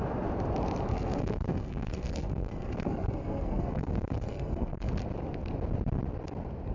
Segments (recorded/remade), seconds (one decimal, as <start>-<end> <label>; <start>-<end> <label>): 0.0-0.9 recorded; 0.9-4.9 remade; 4.9-6.7 recorded